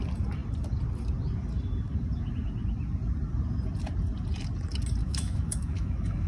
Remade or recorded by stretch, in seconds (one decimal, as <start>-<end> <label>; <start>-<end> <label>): 0.0-5.0 recorded; 5.0-6.3 remade

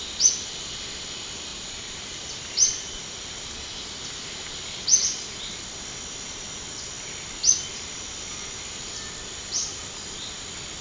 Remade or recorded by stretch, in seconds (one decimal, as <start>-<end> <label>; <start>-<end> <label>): 0.0-1.5 recorded; 1.5-3.2 remade; 3.2-10.8 recorded

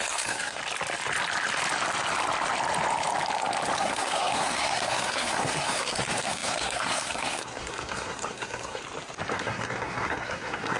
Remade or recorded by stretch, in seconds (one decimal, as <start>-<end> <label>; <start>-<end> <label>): 0.0-0.6 remade; 0.6-3.8 recorded; 3.8-8.8 remade; 8.8-9.3 recorded; 9.3-10.8 remade

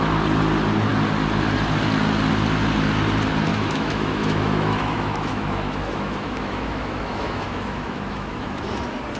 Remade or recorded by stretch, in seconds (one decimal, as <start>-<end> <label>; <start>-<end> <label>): 0.0-3.5 recorded; 3.5-8.6 remade; 8.6-9.2 recorded

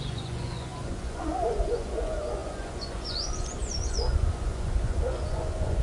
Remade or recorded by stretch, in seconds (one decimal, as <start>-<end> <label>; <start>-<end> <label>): 0.0-5.8 remade

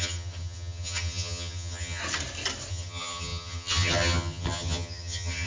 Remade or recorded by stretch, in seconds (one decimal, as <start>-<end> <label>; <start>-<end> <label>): 0.0-2.0 remade; 2.0-2.7 recorded; 2.7-5.5 remade

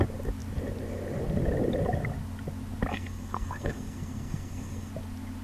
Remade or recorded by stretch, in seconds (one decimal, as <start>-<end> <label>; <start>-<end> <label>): 0.0-2.9 recorded; 2.9-4.9 remade; 4.9-5.4 recorded